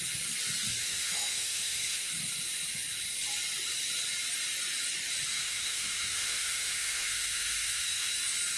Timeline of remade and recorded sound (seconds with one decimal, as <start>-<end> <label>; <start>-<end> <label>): 0.0-0.8 recorded; 0.8-2.1 remade; 2.1-5.3 recorded; 5.3-8.1 remade; 8.1-8.6 recorded